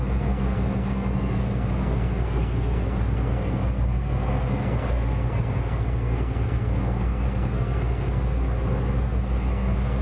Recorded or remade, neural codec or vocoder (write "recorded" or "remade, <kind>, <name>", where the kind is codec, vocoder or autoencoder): remade, codec, SNAC